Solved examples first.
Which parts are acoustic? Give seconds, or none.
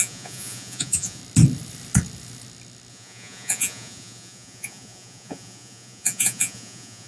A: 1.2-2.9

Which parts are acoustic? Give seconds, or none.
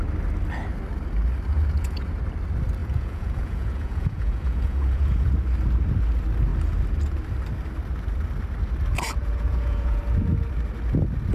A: 0.0-1.5; 2.2-2.8; 5.3-9.2; 10.0-11.3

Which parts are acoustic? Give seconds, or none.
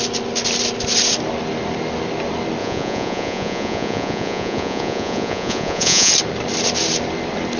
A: 0.0-2.6; 6.1-7.6